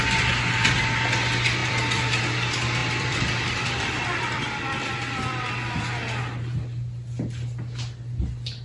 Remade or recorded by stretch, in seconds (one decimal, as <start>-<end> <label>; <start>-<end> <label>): 0.0-1.6 recorded; 1.6-2.2 remade; 2.2-2.8 recorded; 2.8-5.8 remade; 5.8-8.6 recorded

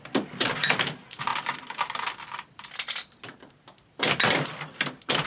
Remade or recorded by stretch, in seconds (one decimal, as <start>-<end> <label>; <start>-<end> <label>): 0.0-5.3 remade